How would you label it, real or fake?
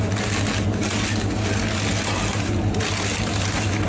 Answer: real